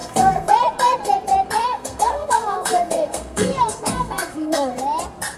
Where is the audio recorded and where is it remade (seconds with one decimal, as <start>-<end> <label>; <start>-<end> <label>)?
0.0-0.5 remade; 0.5-1.6 recorded; 1.6-4.8 remade; 4.8-5.4 recorded